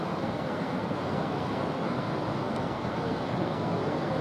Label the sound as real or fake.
fake